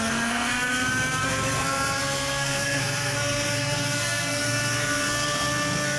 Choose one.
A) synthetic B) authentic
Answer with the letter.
A